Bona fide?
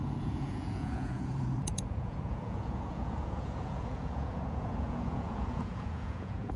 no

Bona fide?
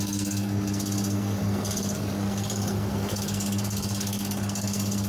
no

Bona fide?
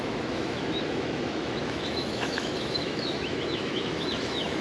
no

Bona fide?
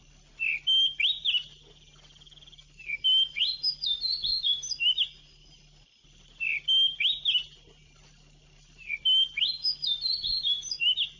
yes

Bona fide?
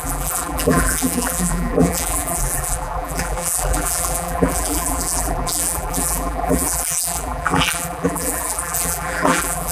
no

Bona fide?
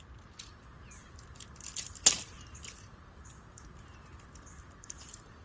yes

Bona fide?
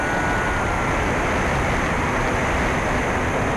yes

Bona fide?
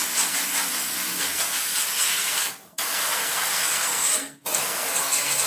no